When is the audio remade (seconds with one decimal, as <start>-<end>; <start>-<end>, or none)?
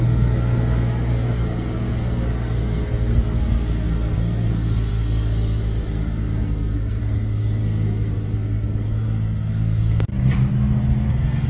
0.0-10.1; 11.1-11.5